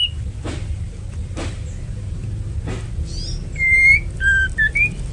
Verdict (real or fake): real